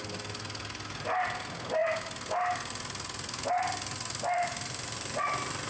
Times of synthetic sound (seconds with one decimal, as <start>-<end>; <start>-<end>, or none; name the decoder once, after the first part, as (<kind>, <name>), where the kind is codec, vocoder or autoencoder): none